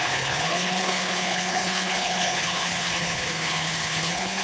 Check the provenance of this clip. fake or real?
fake